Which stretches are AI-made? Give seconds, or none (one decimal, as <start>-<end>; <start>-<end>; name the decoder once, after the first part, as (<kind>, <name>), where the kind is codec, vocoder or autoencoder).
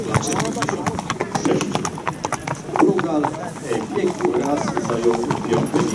none